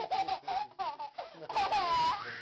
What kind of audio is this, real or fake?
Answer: real